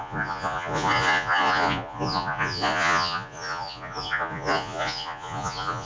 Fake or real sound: fake